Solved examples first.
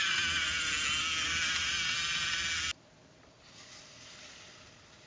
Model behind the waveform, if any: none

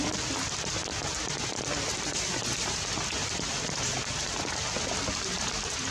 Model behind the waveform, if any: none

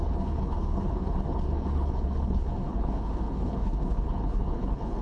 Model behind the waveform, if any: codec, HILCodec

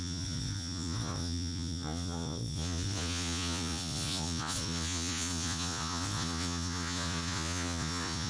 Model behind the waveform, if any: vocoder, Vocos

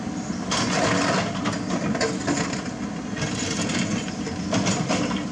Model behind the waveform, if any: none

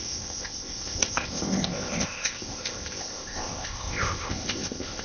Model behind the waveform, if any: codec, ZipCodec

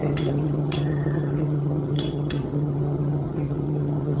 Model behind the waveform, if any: vocoder, HiFi-GAN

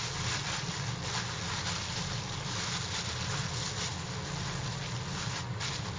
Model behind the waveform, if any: none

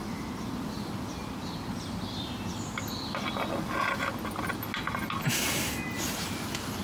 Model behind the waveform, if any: none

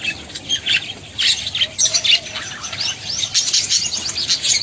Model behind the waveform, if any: none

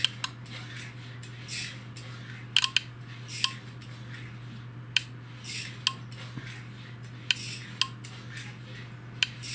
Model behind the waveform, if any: none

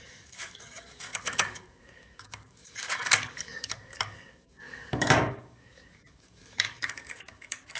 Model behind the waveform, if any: codec, DAC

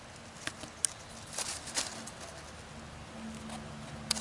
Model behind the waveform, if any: none